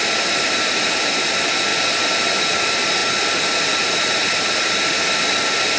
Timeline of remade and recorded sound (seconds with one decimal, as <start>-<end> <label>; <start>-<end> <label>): 0.0-5.8 recorded